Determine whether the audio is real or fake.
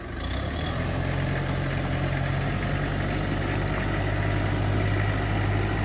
real